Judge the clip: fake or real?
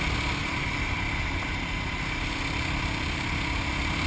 real